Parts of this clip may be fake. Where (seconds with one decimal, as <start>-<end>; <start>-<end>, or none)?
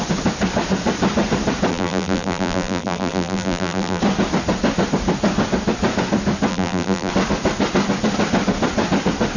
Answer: 1.7-4.0; 6.5-7.1